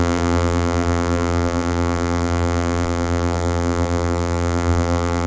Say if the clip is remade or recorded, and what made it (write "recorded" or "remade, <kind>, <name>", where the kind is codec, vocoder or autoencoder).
remade, vocoder, BigVGAN v2